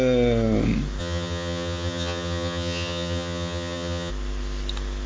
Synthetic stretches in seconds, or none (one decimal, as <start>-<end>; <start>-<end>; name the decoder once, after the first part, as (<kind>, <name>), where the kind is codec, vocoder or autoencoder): 1.0-4.1 (vocoder, HiFi-GAN)